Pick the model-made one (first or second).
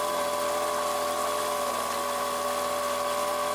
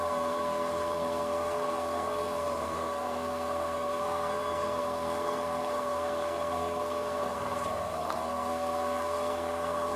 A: second